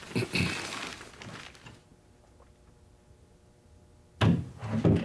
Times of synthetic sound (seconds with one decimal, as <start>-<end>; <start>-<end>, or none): none